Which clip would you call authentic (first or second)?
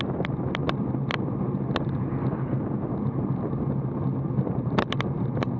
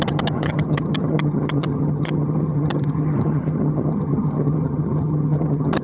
first